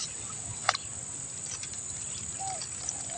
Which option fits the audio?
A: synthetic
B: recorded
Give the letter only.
B